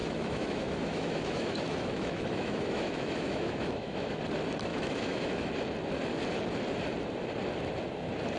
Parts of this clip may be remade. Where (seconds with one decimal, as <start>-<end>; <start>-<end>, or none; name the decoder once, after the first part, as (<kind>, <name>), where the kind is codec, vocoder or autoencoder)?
0.0-4.2 (autoencoder, DAC-VAE); 4.7-5.5